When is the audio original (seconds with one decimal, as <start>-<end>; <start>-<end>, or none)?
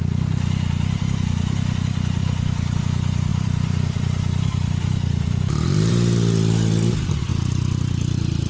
0.0-2.2; 2.8-3.3; 5.9-8.5